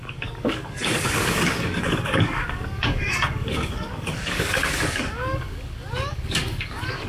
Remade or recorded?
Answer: remade